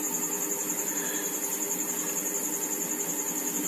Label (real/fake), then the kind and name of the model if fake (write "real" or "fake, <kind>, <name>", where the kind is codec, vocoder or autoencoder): real